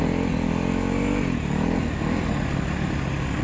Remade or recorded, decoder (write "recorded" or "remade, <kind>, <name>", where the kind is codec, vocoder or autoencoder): recorded